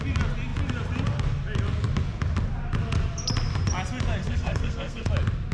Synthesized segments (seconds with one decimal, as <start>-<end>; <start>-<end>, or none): 4.2-5.1